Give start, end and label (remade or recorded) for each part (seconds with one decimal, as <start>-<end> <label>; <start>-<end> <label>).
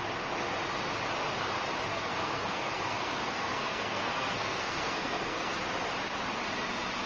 0.0-1.9 recorded; 1.9-5.5 remade; 5.5-7.1 recorded